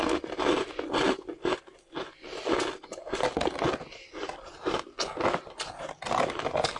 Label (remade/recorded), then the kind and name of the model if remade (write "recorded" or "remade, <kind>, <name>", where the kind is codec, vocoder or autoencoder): recorded